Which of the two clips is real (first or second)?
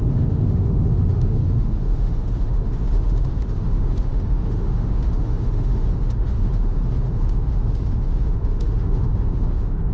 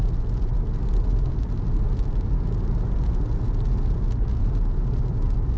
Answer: second